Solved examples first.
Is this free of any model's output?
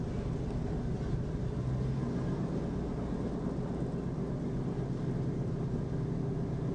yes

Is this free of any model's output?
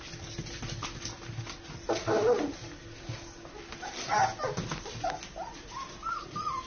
yes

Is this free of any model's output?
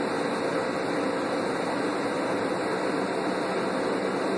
yes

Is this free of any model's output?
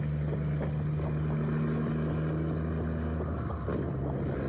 yes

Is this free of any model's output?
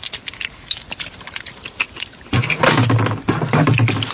yes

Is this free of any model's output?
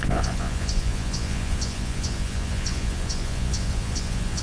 no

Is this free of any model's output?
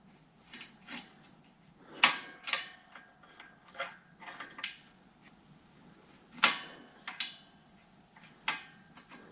yes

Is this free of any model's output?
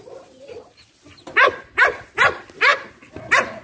yes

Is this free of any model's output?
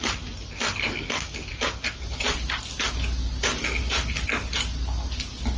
yes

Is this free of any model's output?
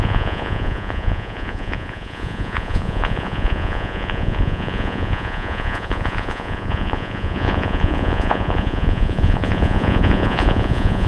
no